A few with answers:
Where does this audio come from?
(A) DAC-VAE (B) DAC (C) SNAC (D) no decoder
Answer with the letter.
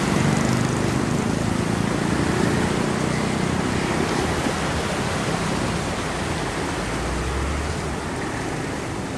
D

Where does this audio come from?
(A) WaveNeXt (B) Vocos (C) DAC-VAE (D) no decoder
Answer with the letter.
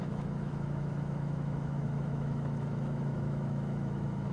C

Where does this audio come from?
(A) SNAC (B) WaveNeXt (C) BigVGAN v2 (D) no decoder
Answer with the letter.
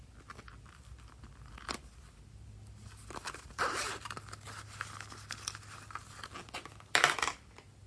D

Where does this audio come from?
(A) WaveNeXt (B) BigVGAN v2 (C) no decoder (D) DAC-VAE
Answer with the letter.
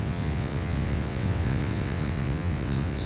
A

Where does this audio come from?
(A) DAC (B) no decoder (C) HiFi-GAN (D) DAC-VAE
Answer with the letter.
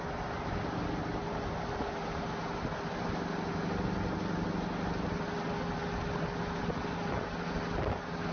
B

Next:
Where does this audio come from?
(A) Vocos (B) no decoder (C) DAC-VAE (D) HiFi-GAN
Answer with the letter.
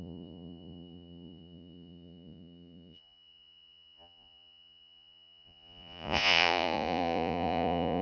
A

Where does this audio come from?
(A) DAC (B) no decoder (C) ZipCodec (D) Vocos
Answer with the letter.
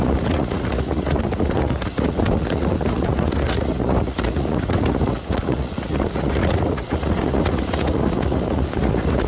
D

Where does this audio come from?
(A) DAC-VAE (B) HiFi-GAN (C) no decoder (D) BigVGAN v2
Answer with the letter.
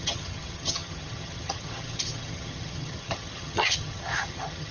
B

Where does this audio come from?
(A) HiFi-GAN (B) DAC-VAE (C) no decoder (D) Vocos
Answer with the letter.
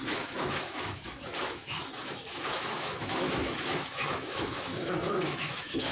B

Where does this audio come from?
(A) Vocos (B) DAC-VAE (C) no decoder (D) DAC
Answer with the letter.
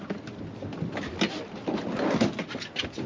C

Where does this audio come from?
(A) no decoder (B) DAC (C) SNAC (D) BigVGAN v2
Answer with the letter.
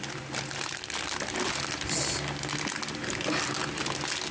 A